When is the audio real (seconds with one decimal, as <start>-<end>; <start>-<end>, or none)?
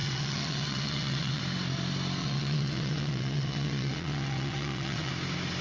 1.4-2.2; 5.1-5.6